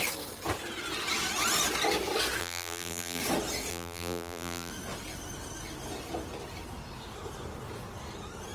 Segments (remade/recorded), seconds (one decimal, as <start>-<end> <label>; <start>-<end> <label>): 0.0-2.4 recorded; 2.4-3.2 remade; 3.2-3.7 recorded; 3.7-4.7 remade; 4.7-8.5 recorded